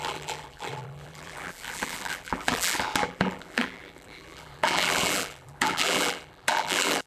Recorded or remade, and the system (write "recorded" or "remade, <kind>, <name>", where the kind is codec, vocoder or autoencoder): remade, vocoder, BigVGAN v2